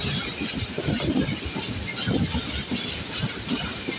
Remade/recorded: recorded